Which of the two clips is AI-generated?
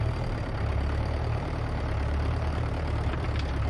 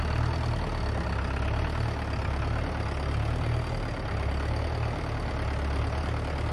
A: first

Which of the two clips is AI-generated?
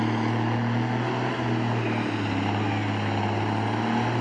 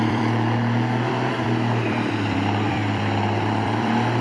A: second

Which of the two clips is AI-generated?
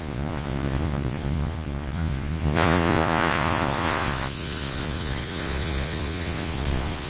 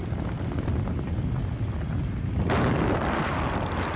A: first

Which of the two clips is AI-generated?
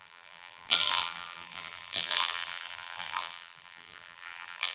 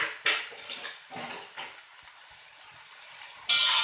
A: first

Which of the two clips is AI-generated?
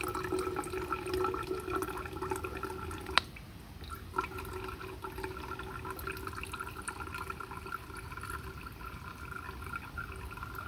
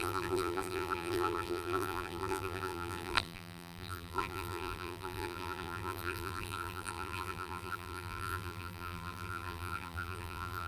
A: second